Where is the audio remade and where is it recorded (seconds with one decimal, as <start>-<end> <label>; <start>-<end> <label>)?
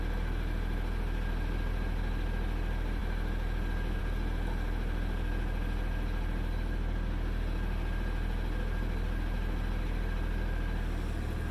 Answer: 0.0-11.5 recorded